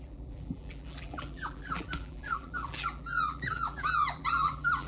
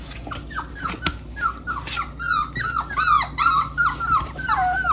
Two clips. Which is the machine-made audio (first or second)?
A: first